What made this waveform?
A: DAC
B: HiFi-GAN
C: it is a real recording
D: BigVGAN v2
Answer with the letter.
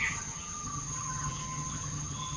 B